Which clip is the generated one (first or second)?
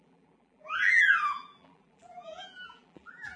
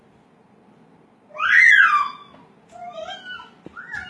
first